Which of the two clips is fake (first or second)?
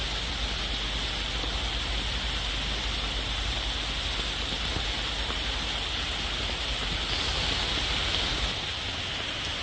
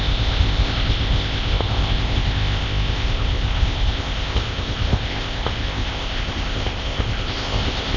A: second